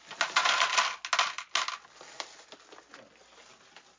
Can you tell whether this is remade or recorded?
recorded